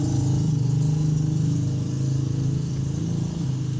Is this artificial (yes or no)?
no